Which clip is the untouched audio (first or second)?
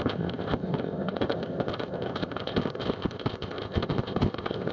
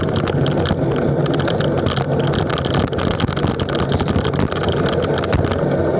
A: second